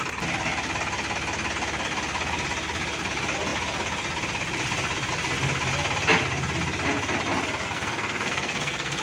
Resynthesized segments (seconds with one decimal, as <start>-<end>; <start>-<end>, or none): 7.6-9.0